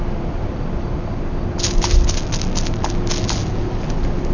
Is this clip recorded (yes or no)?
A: yes